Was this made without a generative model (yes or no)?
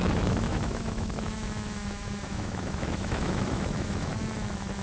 no